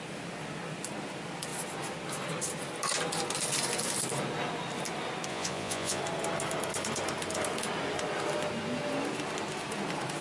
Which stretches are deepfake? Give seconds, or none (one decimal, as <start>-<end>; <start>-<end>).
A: 5.3-6.0